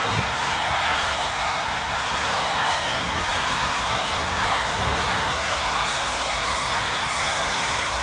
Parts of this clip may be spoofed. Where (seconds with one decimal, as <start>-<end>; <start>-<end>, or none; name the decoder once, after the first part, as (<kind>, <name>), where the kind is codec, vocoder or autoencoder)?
0.0-8.0 (codec, SNAC)